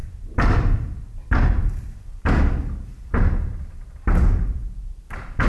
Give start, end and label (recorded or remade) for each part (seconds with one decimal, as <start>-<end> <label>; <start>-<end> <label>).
0.0-5.5 remade